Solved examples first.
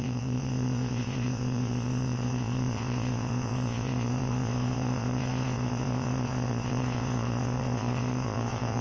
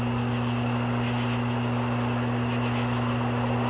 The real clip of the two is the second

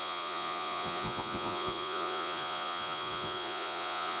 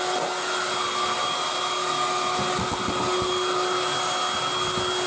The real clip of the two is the second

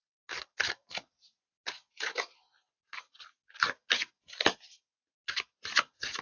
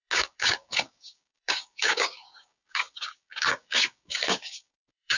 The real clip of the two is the first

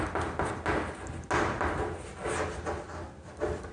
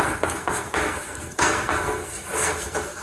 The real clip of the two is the first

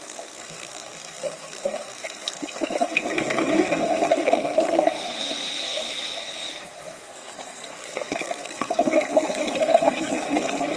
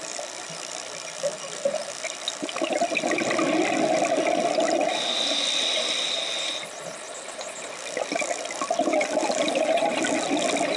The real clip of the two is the second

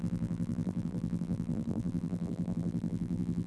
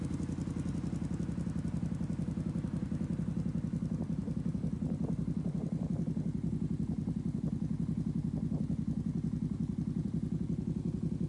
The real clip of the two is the second